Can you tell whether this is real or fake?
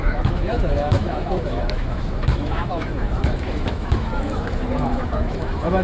fake